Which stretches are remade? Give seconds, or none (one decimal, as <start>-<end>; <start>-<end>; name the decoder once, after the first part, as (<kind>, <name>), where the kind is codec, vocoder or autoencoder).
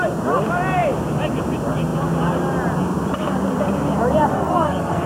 4.3-5.1 (codec, SNAC)